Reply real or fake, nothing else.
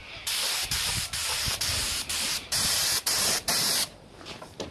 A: fake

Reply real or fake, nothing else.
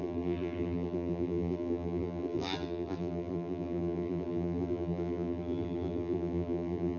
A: fake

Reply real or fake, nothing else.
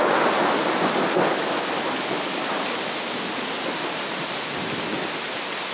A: real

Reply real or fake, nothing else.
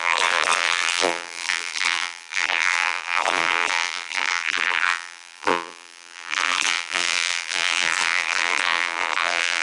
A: fake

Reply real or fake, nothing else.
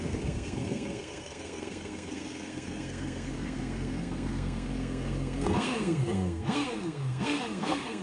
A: fake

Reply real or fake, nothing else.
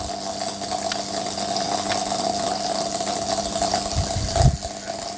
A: real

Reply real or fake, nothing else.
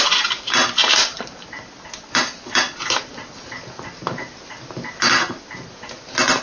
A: real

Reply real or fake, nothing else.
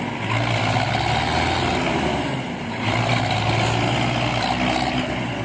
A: real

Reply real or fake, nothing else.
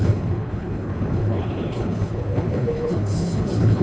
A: fake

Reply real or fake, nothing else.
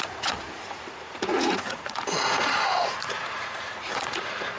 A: fake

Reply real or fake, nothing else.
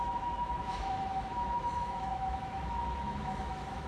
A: fake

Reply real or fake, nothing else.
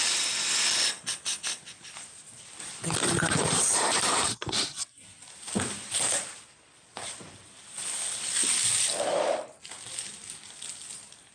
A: real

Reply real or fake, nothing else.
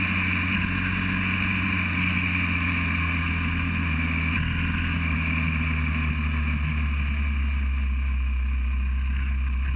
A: real